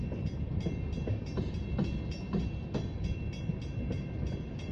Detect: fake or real real